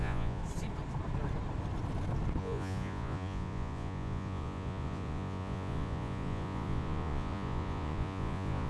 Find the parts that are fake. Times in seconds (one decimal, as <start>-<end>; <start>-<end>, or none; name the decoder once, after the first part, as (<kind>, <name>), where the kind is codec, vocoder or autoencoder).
0.0-0.4 (vocoder, Vocos); 2.4-8.7